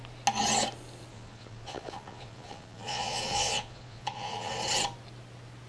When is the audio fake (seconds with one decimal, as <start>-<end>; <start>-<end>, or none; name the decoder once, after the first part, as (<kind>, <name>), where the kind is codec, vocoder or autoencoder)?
1.1-4.5 (vocoder, Vocos)